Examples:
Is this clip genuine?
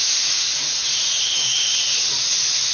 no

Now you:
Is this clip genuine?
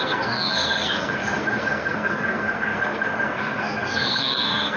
no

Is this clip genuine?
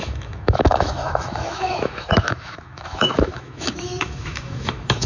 no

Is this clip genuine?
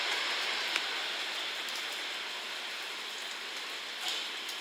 yes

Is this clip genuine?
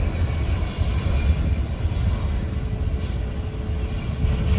yes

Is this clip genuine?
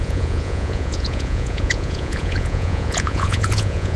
no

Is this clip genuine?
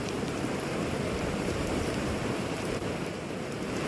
no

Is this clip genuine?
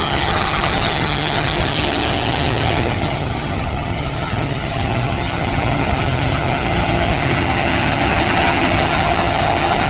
no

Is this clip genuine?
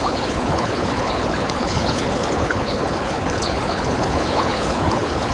no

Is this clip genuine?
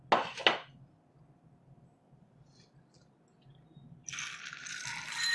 yes